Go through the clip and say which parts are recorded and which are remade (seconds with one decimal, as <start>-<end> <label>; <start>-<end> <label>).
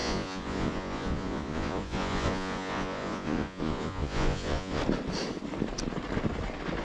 0.0-4.8 remade; 4.8-6.8 recorded